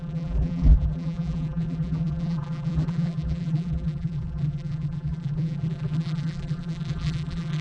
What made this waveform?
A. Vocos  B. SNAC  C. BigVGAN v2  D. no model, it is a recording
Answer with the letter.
C